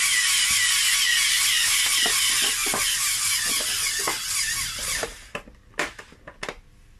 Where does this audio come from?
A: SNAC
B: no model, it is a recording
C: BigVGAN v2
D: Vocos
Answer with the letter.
B